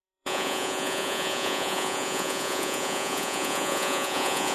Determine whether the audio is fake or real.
fake